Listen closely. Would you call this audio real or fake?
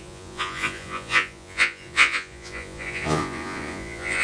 fake